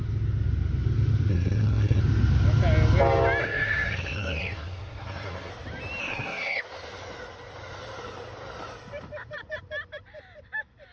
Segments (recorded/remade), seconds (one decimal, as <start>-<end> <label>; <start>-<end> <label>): 0.0-1.3 recorded; 1.3-2.0 remade; 2.0-3.4 recorded; 3.4-5.5 remade; 5.5-6.0 recorded; 6.0-6.6 remade; 6.6-10.9 recorded